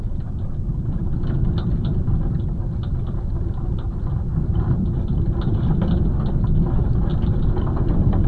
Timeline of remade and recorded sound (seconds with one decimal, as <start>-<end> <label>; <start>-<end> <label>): 0.0-7.1 recorded; 7.1-7.6 remade; 7.6-8.3 recorded